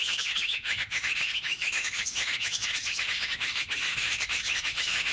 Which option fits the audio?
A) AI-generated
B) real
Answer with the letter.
A